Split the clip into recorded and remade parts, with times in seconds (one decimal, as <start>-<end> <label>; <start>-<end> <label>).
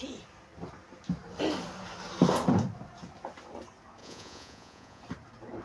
0.0-4.0 recorded; 4.0-5.0 remade; 5.0-5.6 recorded